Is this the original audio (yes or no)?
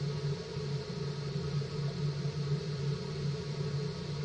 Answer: yes